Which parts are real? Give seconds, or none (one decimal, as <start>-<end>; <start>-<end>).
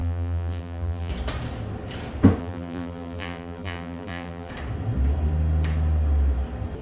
1.1-2.4; 4.5-6.8